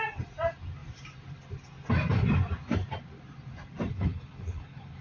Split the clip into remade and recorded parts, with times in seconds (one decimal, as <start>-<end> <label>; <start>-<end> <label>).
0.0-3.9 recorded; 3.9-5.0 remade